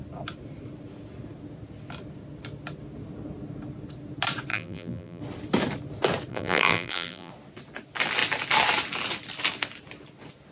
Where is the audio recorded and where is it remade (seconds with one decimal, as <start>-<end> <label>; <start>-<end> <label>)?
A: 0.0-4.5 recorded; 4.5-5.2 remade; 5.2-6.3 recorded; 6.3-7.3 remade; 7.3-10.5 recorded